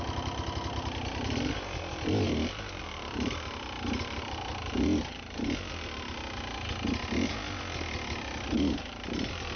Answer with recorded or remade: recorded